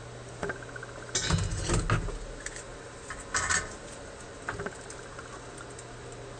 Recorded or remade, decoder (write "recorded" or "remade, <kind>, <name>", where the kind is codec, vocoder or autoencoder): recorded